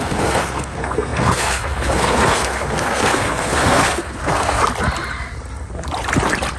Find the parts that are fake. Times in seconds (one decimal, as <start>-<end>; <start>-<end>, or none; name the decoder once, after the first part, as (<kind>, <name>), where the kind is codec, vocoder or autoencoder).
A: 0.0-4.6 (codec, SNAC)